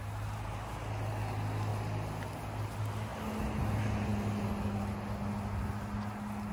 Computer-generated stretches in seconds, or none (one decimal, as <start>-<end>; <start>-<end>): none